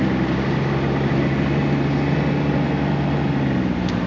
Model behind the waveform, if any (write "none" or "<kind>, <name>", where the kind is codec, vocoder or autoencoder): none